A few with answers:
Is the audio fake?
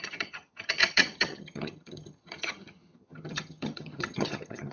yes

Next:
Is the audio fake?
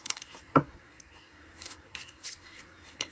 yes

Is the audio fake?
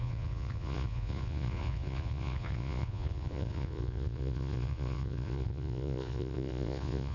yes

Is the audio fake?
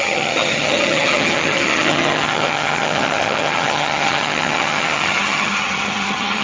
yes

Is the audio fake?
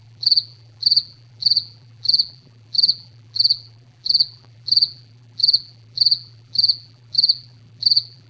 yes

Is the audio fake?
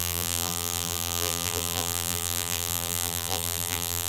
yes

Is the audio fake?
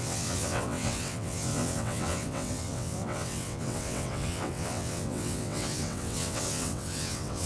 yes